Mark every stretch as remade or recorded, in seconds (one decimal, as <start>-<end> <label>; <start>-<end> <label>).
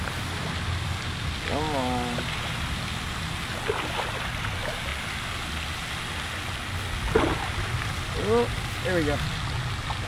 0.0-10.1 recorded